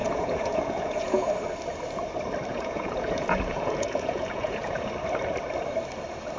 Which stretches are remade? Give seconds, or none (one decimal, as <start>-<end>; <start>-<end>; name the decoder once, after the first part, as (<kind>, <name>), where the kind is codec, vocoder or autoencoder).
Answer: 0.0-1.3 (vocoder, Vocos); 2.5-4.9